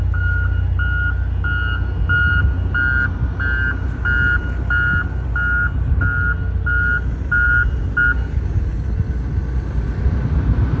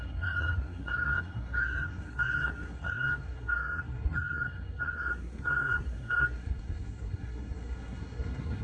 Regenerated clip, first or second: second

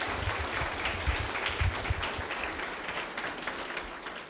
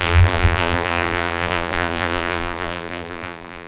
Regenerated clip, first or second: second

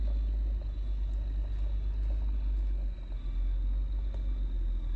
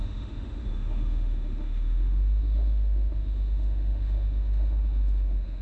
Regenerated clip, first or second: second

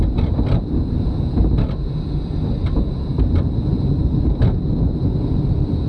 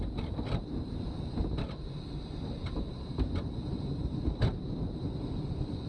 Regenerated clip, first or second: second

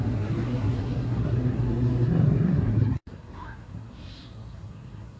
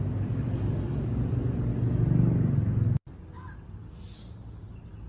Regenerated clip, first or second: first